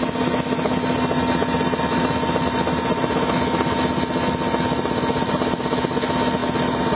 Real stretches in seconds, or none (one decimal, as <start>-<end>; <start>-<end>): 0.0-7.0